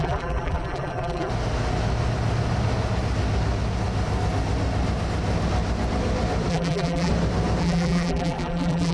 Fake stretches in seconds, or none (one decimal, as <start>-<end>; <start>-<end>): 0.0-1.3; 6.5-7.1; 7.6-8.9

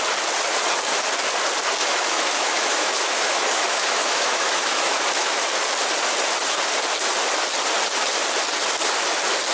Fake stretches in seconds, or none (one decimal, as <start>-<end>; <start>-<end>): 1.8-5.4

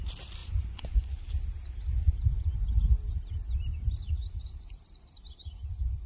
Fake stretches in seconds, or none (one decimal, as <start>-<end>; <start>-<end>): 0.4-1.2

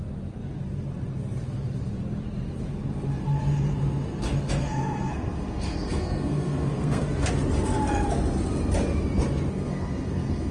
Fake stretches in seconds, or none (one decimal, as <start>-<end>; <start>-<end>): 4.6-7.3; 9.5-10.5

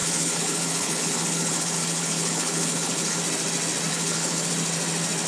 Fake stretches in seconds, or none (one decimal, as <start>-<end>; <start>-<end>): 0.0-3.2; 3.9-4.5

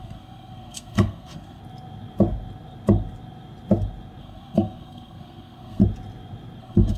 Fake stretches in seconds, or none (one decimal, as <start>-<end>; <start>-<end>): 0.0-1.6; 4.2-5.8; 6.6-7.0

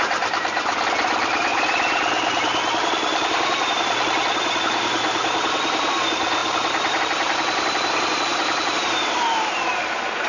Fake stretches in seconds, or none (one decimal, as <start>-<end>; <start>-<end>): 0.0-10.3